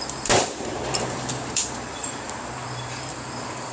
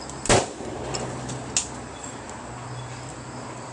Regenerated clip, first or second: first